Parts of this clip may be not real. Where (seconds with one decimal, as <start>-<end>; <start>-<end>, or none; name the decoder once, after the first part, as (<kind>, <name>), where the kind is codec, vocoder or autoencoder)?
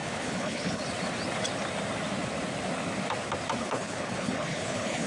0.0-0.8 (codec, HILCodec); 3.6-5.1